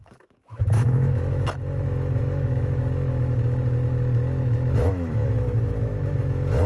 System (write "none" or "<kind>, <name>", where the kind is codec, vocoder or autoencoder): autoencoder, DAC-VAE